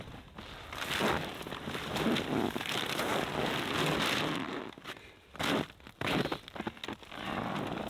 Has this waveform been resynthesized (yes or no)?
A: no